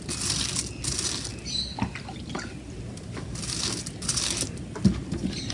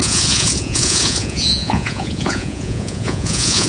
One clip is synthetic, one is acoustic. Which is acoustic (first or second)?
first